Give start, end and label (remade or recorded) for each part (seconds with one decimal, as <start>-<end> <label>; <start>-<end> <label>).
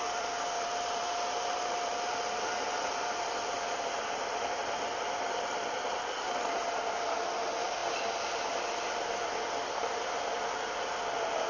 0.0-11.5 recorded